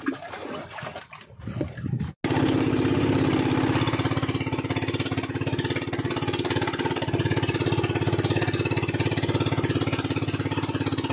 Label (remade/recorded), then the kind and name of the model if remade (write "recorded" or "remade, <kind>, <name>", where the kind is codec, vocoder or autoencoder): recorded